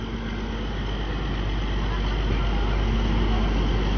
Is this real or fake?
real